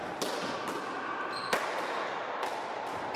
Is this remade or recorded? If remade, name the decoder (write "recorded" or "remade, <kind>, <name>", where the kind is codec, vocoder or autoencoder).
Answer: recorded